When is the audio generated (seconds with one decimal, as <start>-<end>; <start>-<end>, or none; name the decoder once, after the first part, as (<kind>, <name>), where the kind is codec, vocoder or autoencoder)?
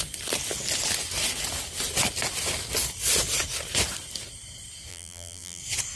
4.9-5.6 (vocoder, BigVGAN v2)